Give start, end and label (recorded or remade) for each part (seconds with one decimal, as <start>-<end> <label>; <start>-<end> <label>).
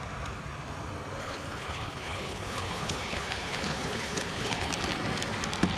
0.0-1.2 recorded; 1.2-4.7 remade; 4.7-5.8 recorded